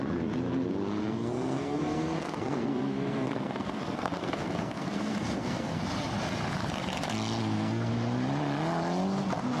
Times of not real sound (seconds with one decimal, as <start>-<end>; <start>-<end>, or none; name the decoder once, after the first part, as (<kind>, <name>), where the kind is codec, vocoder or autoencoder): 1.0-5.8 (codec, SNAC); 7.4-7.9